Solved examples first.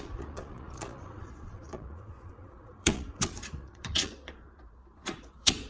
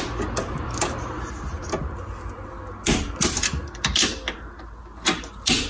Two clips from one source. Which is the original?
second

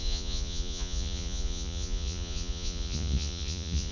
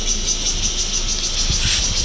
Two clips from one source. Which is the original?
second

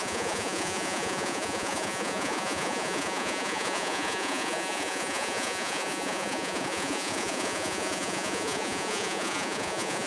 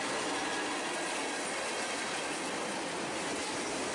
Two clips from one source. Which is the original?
second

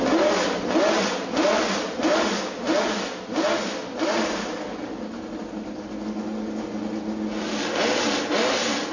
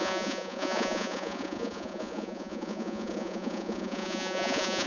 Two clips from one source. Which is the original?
first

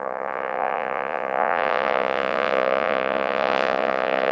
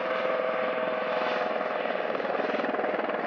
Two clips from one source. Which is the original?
second